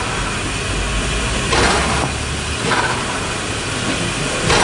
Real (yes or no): yes